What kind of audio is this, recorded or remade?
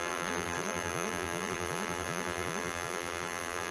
remade